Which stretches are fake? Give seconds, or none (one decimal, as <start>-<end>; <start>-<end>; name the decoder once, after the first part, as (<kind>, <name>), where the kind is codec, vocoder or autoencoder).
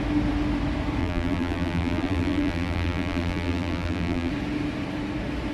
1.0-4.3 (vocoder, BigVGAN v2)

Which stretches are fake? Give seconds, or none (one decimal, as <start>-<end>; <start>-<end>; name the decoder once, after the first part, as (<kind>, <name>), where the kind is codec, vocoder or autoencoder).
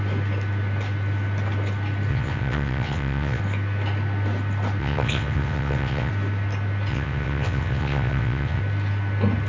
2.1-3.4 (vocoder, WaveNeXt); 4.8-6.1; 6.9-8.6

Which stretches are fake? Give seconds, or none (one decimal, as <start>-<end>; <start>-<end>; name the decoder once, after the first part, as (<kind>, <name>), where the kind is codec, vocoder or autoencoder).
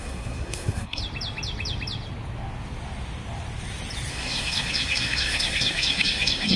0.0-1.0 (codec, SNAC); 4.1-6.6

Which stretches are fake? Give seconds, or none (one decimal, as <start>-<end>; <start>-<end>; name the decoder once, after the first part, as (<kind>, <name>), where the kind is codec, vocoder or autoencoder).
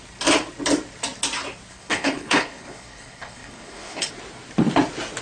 1.7-4.1 (codec, HILCodec)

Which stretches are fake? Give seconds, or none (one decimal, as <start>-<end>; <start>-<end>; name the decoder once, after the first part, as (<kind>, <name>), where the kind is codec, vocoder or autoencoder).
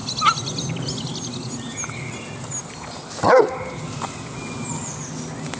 none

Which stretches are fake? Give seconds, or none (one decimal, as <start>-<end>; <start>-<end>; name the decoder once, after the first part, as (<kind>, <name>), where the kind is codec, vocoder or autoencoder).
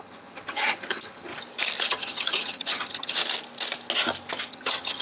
0.0-1.3 (vocoder, HiFi-GAN); 1.9-3.2; 4.5-5.0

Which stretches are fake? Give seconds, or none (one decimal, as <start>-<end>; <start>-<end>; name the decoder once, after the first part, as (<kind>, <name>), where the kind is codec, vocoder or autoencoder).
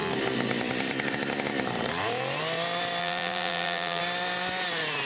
3.0-4.0 (vocoder, BigVGAN v2)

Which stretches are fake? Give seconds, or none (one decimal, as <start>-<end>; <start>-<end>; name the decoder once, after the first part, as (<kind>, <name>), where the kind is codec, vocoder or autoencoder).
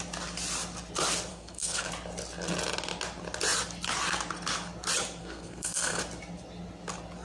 1.3-1.9 (codec, SNAC); 5.2-6.0